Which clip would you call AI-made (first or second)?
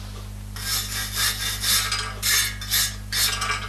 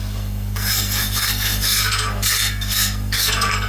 second